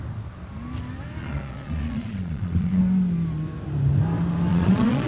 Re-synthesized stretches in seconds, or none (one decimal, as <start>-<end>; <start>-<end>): 1.2-2.8; 4.5-5.1